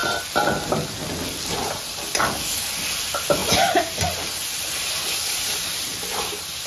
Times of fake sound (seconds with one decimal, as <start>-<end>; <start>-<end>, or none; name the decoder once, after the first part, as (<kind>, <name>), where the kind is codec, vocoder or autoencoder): none